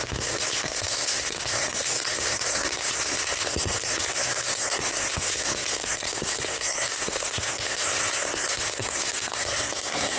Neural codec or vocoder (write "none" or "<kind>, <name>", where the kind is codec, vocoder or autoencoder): codec, SNAC